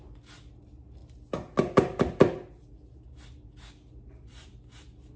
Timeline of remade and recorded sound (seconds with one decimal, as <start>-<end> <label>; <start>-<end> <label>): 0.0-5.2 recorded